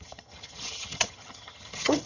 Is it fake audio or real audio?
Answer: fake